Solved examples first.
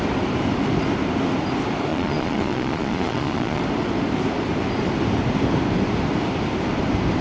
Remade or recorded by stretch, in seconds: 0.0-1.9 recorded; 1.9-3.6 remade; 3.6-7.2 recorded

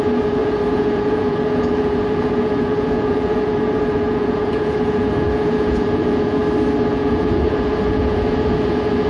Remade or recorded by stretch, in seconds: 0.0-6.4 remade; 6.4-6.9 recorded; 6.9-9.1 remade

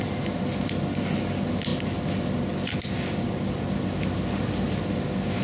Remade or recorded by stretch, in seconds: 0.0-5.4 recorded

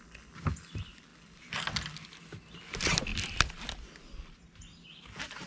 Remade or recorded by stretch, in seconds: 0.0-5.5 recorded

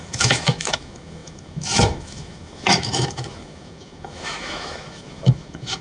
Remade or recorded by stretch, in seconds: 0.0-5.8 remade

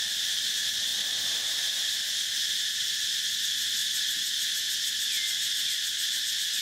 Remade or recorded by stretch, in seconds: 0.0-6.6 recorded

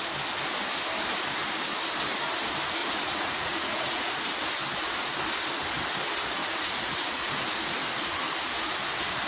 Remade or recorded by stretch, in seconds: 0.0-2.8 recorded; 2.8-4.3 remade; 4.3-6.4 recorded; 6.4-7.3 remade; 7.3-9.3 recorded

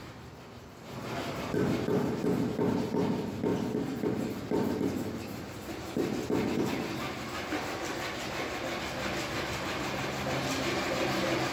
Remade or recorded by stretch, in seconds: 0.0-11.5 recorded